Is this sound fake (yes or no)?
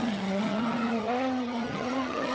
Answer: yes